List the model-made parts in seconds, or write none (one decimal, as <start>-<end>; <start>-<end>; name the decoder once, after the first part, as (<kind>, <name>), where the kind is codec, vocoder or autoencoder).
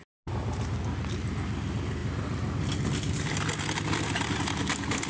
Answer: none